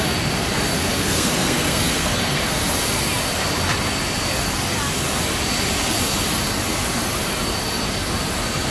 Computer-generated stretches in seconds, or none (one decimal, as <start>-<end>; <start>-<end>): 0.8-2.4